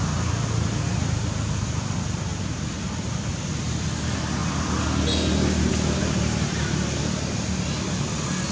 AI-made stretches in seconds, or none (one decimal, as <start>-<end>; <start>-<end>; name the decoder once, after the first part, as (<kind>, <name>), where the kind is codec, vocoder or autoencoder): none